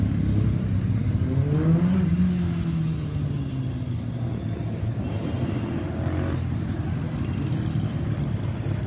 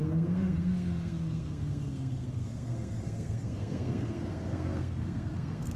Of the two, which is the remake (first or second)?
second